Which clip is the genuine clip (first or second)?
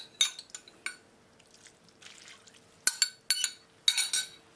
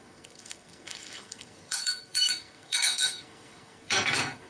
first